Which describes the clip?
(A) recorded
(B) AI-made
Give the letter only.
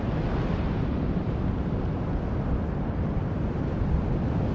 A